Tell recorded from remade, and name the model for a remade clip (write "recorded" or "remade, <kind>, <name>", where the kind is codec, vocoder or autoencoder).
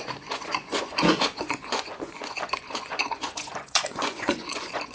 remade, vocoder, Vocos